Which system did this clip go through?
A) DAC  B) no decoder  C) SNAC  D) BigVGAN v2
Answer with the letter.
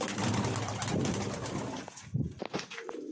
B